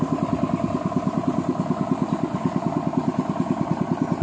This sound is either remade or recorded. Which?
recorded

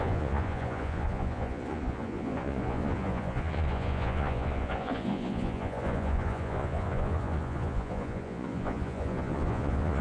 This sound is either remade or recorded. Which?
remade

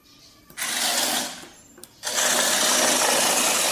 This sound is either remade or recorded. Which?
recorded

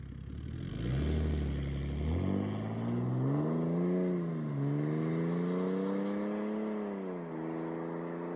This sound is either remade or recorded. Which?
recorded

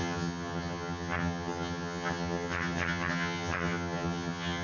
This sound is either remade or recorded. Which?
remade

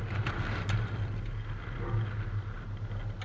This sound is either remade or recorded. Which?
recorded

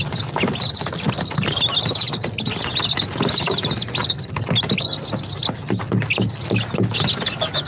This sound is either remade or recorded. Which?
recorded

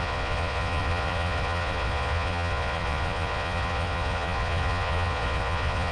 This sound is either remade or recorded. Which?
remade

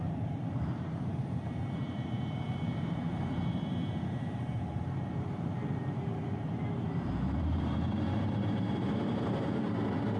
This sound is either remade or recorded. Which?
remade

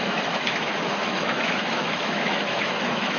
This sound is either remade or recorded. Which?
remade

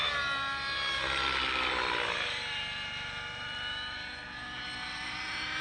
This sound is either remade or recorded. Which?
recorded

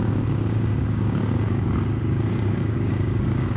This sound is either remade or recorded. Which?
remade